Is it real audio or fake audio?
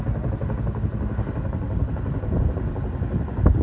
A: real